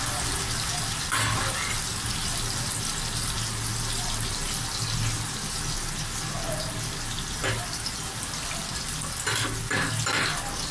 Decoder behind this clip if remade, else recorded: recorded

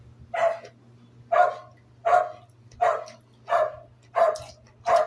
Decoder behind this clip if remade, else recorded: recorded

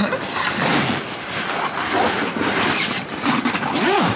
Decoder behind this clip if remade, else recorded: recorded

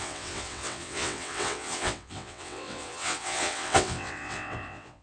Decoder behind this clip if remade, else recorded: remade, vocoder, WaveNeXt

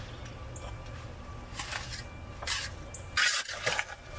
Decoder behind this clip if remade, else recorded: recorded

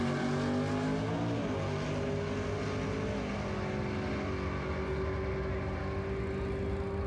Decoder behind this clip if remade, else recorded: recorded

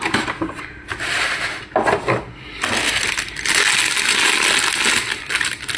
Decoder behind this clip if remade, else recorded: recorded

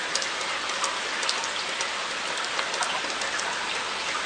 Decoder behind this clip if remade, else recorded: recorded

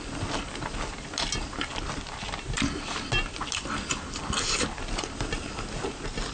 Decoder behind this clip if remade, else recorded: recorded